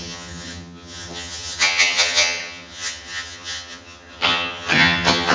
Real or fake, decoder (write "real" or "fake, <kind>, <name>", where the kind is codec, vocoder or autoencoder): fake, vocoder, HiFi-GAN